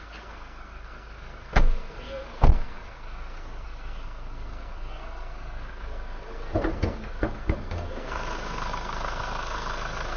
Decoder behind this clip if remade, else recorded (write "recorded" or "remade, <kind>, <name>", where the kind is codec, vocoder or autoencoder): remade, codec, SNAC